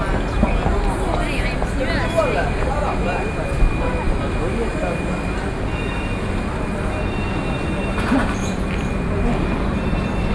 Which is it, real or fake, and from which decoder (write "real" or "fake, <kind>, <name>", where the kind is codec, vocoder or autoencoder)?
real